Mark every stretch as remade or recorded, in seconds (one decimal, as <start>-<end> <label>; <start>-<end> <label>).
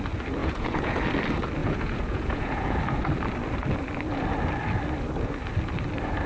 0.0-0.4 recorded; 0.4-1.0 remade; 1.0-1.6 recorded; 1.6-2.8 remade; 2.8-6.3 recorded